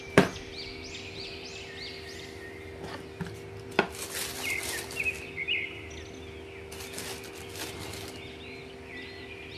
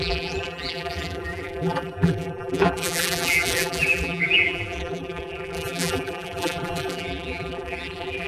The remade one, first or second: second